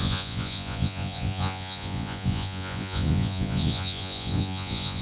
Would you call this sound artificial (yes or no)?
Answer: yes